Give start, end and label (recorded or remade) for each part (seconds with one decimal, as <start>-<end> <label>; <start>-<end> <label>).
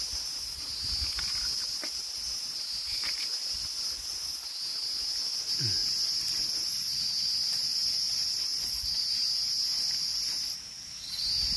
0.0-11.6 recorded